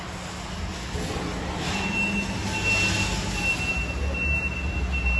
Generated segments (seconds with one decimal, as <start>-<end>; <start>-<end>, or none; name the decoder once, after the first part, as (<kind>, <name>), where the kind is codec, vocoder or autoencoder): none